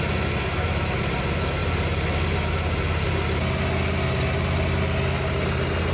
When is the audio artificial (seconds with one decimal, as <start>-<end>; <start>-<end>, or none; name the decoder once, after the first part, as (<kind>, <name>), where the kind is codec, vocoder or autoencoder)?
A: none